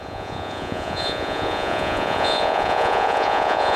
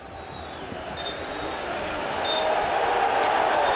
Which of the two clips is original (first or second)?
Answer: second